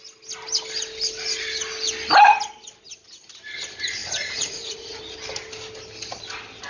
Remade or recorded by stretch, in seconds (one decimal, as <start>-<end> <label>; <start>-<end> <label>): 0.0-4.0 recorded; 4.0-5.0 remade; 5.0-6.7 recorded